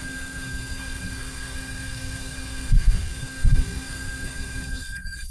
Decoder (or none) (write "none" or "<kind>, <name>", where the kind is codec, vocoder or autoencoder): codec, SNAC